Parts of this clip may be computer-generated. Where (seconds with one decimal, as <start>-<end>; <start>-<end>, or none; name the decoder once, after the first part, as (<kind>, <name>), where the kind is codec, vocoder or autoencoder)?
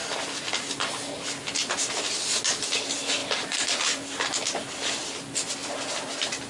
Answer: none